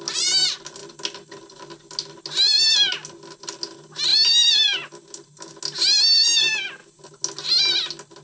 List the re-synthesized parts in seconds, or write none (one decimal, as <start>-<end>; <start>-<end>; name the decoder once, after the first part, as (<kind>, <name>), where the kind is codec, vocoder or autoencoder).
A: none